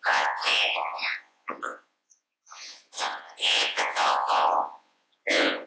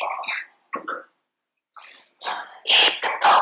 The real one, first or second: second